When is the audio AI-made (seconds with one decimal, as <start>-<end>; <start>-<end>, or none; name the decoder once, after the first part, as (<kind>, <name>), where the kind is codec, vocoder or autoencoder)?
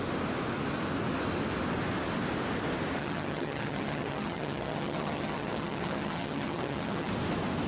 3.0-7.1 (vocoder, HiFi-GAN)